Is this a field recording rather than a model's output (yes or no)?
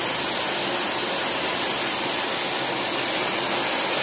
yes